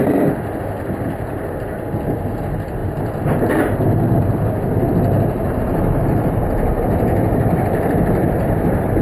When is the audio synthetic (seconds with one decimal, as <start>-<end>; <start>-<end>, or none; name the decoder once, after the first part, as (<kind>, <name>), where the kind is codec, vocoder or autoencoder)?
0.0-2.8 (vocoder, BigVGAN v2); 5.6-9.0